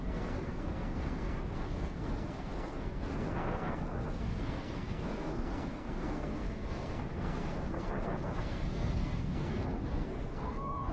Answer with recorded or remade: remade